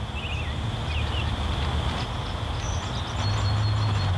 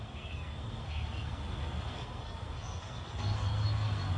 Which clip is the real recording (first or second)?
first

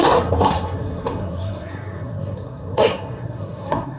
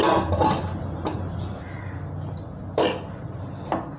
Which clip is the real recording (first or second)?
second